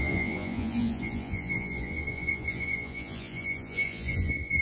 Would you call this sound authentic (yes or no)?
no